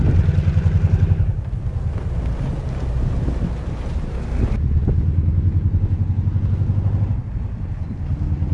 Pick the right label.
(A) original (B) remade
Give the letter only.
A